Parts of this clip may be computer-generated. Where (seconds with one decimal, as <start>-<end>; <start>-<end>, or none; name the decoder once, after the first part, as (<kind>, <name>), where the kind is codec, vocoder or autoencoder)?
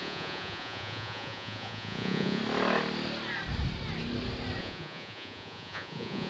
0.0-2.4 (vocoder, Vocos); 4.6-6.3